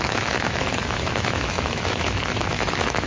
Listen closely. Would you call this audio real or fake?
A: fake